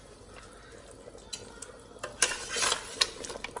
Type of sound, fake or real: real